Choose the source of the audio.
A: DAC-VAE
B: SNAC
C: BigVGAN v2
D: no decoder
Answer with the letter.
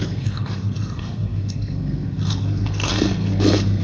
B